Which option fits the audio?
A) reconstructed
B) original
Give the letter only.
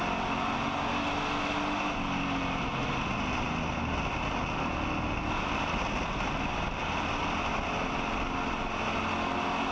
B